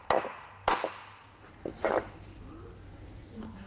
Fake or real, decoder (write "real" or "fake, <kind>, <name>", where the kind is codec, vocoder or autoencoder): real